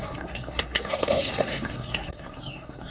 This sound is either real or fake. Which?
fake